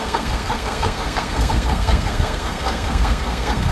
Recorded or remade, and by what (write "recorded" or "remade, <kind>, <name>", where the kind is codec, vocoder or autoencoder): remade, codec, SNAC